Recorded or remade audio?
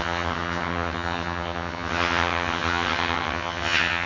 remade